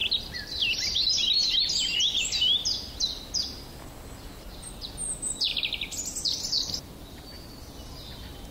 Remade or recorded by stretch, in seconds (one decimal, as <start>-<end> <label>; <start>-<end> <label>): 0.0-8.5 recorded